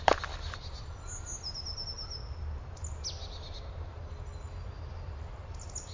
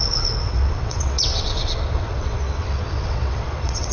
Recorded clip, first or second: first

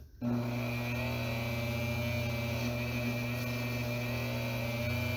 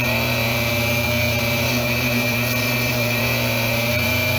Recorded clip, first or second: first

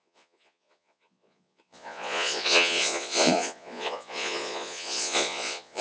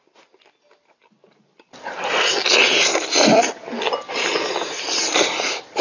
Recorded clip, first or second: second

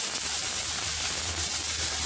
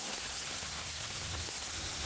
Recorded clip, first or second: first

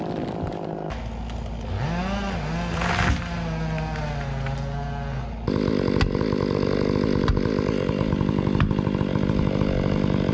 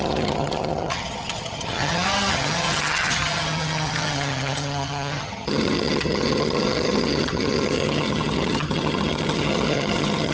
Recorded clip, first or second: first